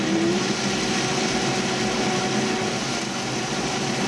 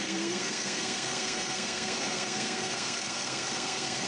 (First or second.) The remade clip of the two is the second